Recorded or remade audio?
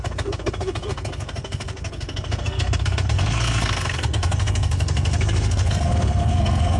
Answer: remade